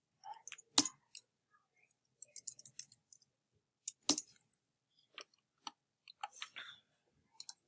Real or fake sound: real